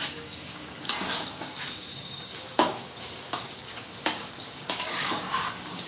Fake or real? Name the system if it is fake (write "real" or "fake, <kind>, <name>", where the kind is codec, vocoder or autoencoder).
fake, codec, DAC